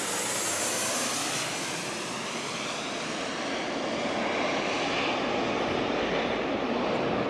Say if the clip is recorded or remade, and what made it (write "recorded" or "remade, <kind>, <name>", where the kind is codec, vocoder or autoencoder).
recorded